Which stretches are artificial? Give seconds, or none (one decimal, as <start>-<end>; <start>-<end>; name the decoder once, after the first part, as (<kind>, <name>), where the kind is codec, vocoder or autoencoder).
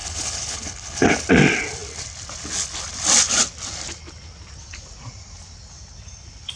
0.0-1.3 (codec, HILCodec)